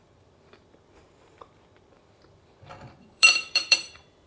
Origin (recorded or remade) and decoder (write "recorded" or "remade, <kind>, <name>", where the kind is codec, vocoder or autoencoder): remade, vocoder, BigVGAN v2